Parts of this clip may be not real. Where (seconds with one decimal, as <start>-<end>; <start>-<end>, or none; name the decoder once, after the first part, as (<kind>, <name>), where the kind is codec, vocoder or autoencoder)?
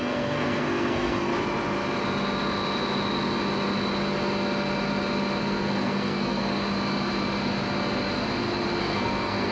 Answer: 0.0-1.3 (codec, SNAC); 5.4-6.6; 8.8-9.5